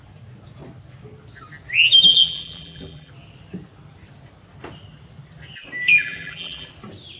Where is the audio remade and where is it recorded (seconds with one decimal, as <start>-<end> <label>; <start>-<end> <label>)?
0.0-2.1 recorded; 2.1-3.1 remade; 3.1-5.9 recorded; 5.9-6.7 remade; 6.7-7.2 recorded